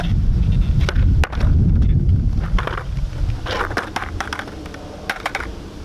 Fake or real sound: real